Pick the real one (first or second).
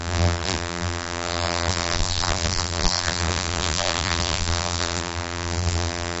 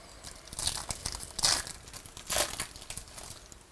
second